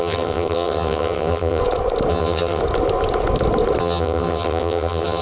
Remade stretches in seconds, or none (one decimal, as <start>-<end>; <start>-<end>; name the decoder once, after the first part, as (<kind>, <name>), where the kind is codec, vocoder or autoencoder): 0.0-1.6 (vocoder, HiFi-GAN); 2.1-2.6; 3.8-5.2